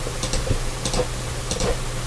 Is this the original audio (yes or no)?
yes